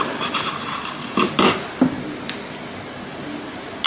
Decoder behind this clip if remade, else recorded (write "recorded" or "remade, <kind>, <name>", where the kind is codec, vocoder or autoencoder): recorded